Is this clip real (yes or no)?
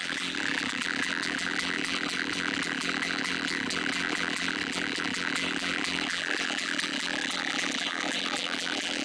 no